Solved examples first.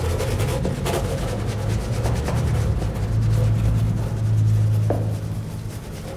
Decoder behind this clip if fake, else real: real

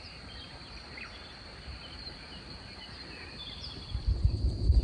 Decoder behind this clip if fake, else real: fake, vocoder, BigVGAN v2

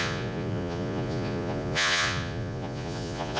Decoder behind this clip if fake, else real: fake, vocoder, Vocos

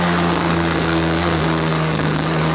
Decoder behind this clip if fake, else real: fake, codec, DAC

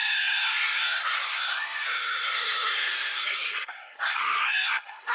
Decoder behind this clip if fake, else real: fake, codec, SNAC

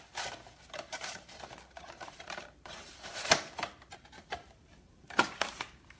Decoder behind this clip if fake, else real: fake, vocoder, BigVGAN v2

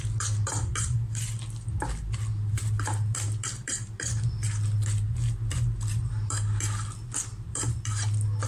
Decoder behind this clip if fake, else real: fake, vocoder, BigVGAN v2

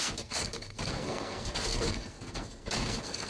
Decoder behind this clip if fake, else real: fake, codec, SNAC